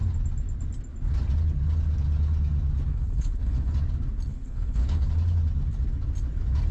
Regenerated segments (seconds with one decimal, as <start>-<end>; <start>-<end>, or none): 2.9-3.7; 4.3-5.1